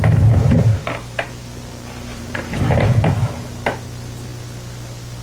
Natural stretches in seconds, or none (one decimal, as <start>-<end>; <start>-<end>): 0.0-0.7; 1.3-2.1; 2.9-5.2